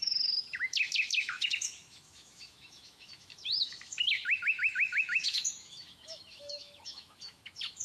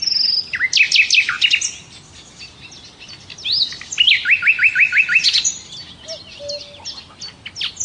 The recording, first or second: second